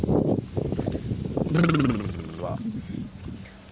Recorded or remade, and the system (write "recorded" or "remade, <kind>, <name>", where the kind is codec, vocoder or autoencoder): recorded